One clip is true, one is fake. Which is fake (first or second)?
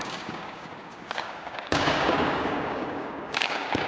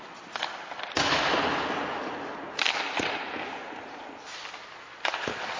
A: first